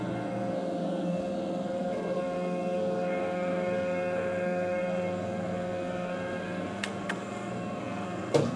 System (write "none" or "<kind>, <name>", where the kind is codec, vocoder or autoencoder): codec, SNAC